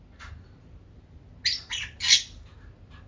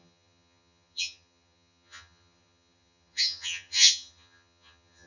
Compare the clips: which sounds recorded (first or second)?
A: first